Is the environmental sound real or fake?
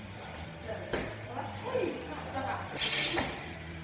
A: real